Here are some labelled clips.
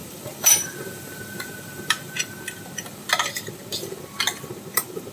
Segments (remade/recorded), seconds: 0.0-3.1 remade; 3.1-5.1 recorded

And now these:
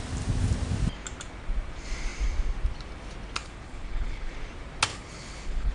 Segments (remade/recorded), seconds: 0.0-3.4 recorded; 3.4-4.3 remade; 4.3-4.9 recorded; 4.9-5.7 remade

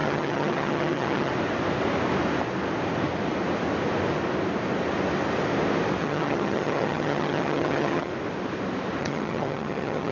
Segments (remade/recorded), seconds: 0.0-1.3 remade; 1.3-6.0 recorded; 6.0-8.1 remade; 8.1-9.0 recorded; 9.0-10.1 remade

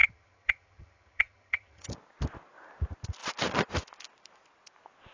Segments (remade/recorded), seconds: 0.0-1.9 remade; 1.9-5.1 recorded

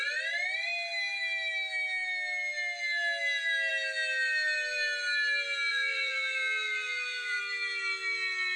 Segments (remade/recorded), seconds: 0.0-5.7 recorded; 5.7-7.4 remade; 7.4-8.6 recorded

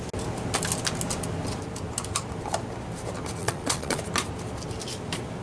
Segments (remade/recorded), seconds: 0.0-3.4 recorded; 3.4-4.0 remade; 4.0-5.4 recorded

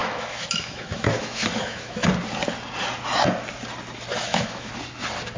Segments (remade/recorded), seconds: 0.0-2.1 remade; 2.1-4.2 recorded; 4.2-4.7 remade; 4.7-5.4 recorded